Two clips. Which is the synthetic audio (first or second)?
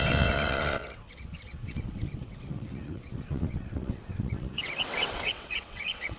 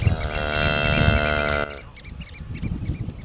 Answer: first